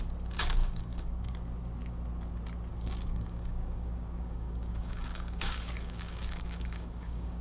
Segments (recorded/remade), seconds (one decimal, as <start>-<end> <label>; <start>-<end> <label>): 0.0-0.6 recorded; 0.6-1.3 remade; 1.3-2.7 recorded; 2.7-7.4 remade

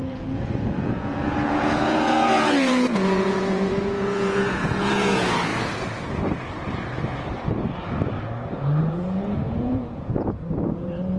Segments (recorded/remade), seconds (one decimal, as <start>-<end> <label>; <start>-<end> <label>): 0.0-5.5 remade; 5.5-8.8 recorded; 8.8-11.2 remade

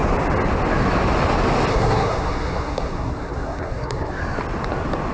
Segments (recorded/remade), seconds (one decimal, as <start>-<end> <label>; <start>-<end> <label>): 0.0-1.7 recorded; 1.7-4.2 remade; 4.2-5.1 recorded

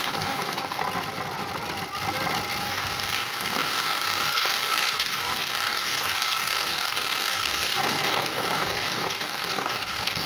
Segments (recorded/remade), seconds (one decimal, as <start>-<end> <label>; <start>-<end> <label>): 0.0-0.8 remade; 0.8-2.6 recorded; 2.6-10.3 remade

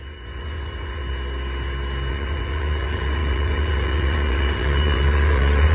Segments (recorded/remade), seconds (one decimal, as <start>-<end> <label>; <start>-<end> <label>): 0.0-1.0 remade; 1.0-2.1 recorded; 2.1-5.7 remade

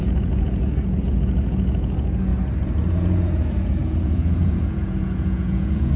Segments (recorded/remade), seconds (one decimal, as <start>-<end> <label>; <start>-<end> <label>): 0.0-2.3 remade; 2.3-2.9 recorded; 2.9-6.0 remade

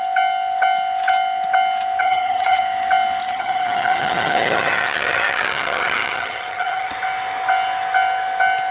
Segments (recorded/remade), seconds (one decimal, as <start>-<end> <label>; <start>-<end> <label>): 0.0-2.0 recorded; 2.0-2.6 remade; 2.6-3.2 recorded; 3.2-6.9 remade; 6.9-8.7 recorded

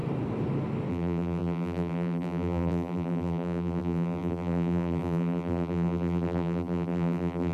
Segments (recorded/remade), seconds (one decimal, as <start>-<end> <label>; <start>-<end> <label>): 0.0-0.9 recorded; 0.9-7.5 remade